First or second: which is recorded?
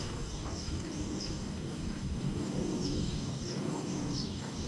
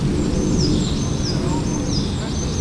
second